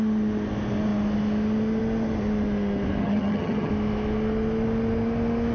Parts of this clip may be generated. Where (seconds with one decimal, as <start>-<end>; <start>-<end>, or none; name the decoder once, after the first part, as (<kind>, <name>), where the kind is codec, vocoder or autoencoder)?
3.0-3.7 (vocoder, HiFi-GAN)